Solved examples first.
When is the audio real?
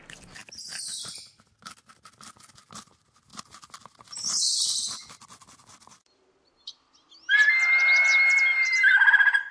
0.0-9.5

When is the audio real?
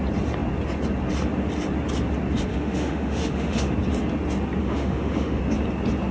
0.0-2.5; 3.7-4.6; 5.4-6.1